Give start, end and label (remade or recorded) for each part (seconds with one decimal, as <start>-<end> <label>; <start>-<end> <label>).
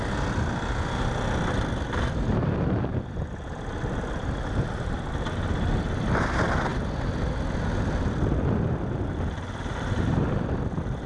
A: 0.0-11.1 recorded